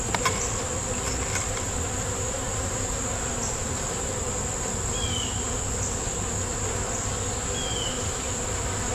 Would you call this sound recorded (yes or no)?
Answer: yes